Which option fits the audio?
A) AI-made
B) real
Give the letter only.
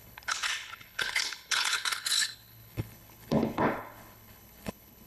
A